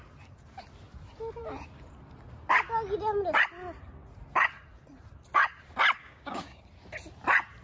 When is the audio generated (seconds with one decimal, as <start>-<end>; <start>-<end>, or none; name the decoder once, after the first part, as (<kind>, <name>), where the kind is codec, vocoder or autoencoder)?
6.0-6.6 (codec, DAC)